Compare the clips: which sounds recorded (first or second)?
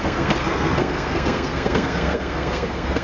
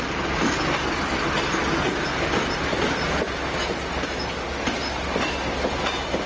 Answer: second